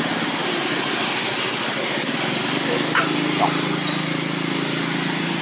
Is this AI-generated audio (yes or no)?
no